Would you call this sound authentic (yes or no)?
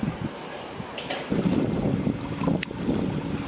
yes